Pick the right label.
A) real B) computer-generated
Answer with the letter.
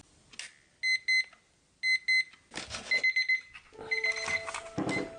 A